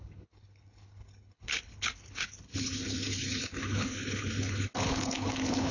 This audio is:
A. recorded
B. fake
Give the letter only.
B